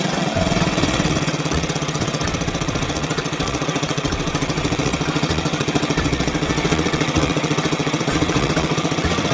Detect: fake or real fake